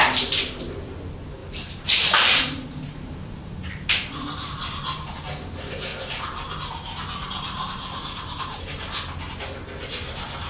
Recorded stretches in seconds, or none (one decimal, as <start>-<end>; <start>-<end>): 0.0-1.4; 4.5-5.9; 8.6-10.5